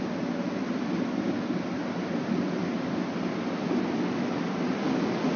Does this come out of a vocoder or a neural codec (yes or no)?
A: no